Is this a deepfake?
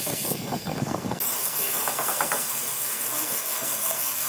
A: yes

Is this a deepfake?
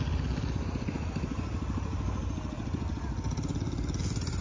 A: no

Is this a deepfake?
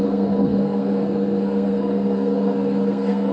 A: yes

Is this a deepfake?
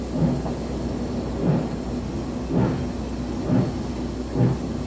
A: no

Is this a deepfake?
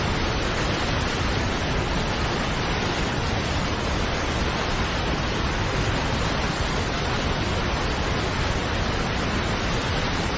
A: no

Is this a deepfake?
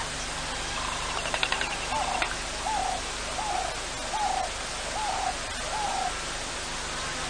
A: no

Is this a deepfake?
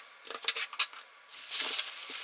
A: no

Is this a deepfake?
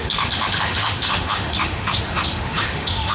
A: yes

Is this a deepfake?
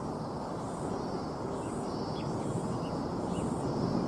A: no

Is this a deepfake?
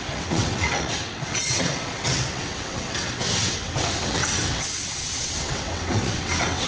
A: yes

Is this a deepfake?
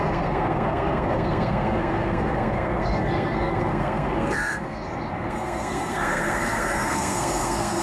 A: yes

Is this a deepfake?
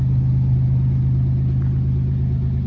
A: no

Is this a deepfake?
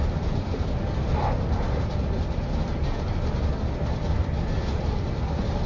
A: no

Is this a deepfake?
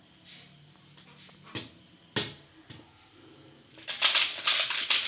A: no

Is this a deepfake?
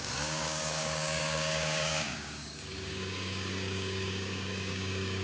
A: yes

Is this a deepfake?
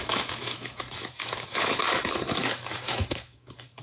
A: yes